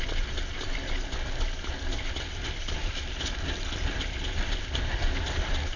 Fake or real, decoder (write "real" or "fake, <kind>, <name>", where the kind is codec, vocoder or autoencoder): real